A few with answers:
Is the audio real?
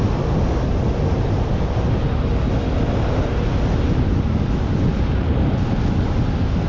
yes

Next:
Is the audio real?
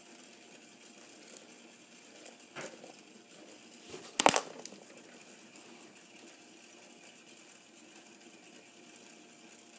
yes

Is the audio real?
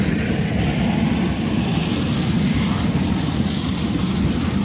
yes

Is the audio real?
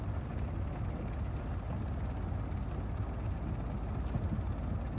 yes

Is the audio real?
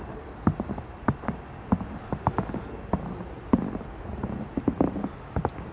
yes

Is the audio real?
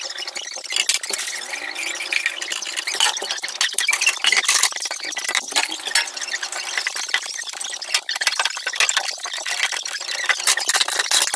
yes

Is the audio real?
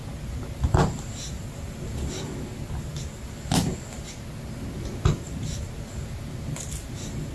yes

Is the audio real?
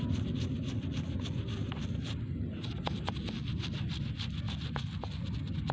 yes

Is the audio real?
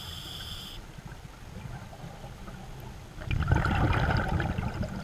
yes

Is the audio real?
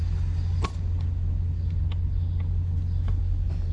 yes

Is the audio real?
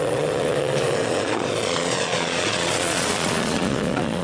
no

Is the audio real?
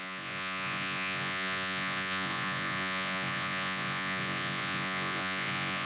no